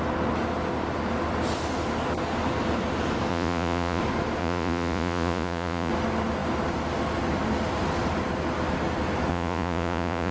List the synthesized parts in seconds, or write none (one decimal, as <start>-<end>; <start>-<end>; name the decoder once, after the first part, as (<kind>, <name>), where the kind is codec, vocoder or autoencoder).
3.3-4.0 (vocoder, Vocos); 4.4-5.9; 9.3-10.3